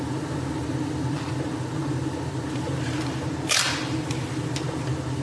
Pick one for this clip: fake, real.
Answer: real